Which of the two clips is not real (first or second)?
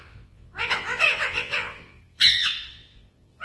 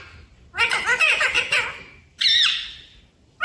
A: first